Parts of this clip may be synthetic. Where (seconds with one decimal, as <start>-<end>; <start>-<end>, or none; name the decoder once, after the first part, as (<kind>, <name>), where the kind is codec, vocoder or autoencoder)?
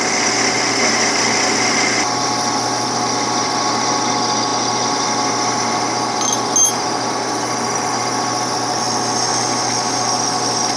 none